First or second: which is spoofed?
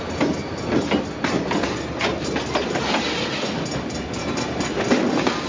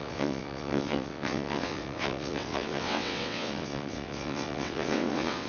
second